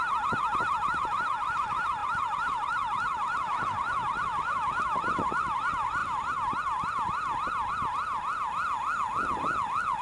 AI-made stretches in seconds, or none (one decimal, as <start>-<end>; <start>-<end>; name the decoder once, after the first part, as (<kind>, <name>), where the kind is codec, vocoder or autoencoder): none